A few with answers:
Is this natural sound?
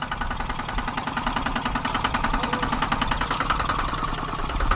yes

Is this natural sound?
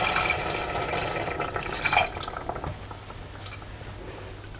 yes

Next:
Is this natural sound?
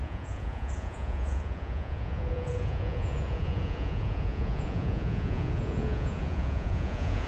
no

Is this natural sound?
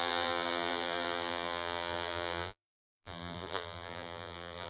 no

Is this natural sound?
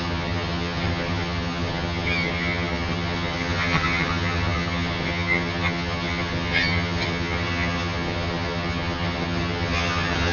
no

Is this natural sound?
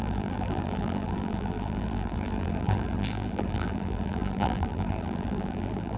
no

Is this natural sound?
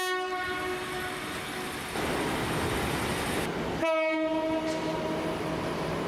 yes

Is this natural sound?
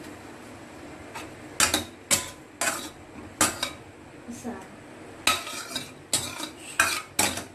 yes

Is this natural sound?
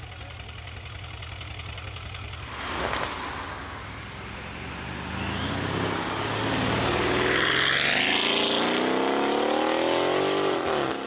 yes